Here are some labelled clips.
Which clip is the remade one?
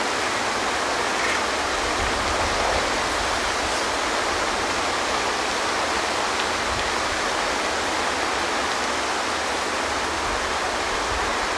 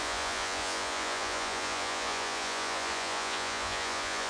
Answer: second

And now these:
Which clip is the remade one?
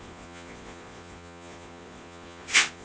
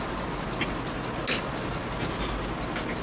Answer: first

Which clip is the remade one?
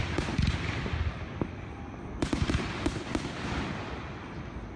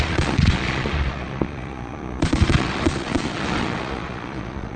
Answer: second